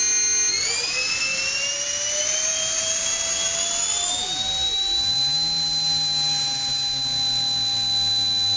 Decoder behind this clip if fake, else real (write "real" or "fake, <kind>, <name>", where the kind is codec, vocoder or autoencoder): real